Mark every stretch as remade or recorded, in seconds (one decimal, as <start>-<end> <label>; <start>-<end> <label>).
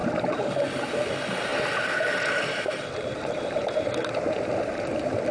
0.0-1.0 remade; 1.0-1.5 recorded; 1.5-4.7 remade; 4.7-5.3 recorded